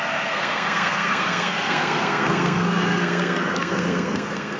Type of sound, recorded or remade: remade